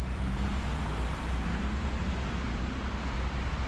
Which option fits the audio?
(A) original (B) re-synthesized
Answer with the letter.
B